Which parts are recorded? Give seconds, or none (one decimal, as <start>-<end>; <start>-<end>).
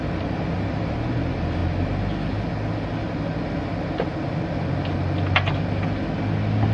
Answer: 0.0-6.7